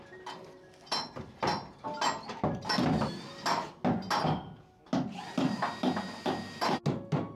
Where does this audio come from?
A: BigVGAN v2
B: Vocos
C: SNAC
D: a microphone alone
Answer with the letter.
D